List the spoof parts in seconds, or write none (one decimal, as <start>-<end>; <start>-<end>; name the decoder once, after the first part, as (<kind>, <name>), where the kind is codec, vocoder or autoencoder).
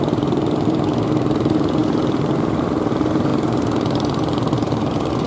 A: 0.0-5.3 (vocoder, BigVGAN v2)